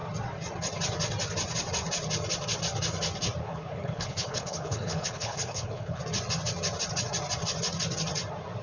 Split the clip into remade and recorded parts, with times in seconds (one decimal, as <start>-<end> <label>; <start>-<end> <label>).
0.0-3.4 recorded; 3.4-6.0 remade; 6.0-8.6 recorded